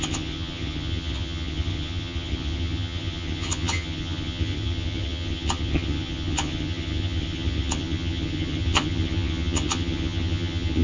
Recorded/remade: remade